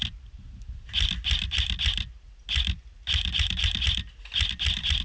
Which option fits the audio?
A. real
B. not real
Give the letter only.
A